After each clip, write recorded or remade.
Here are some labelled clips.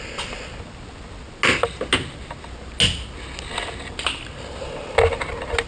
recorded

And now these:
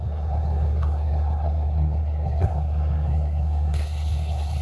remade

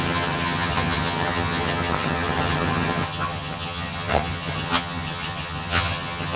remade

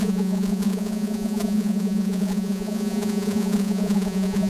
remade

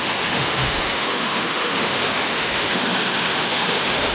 remade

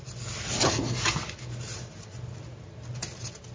recorded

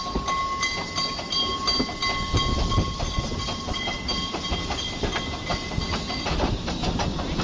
recorded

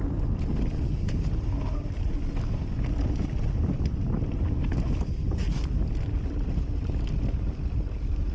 recorded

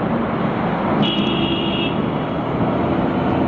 recorded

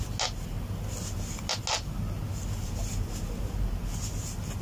recorded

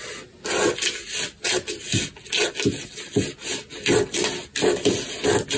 recorded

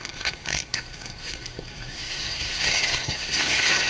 remade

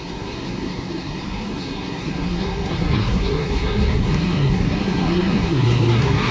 remade